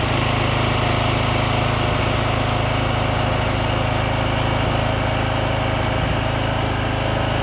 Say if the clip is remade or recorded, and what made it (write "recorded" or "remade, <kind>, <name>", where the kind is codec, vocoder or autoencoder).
recorded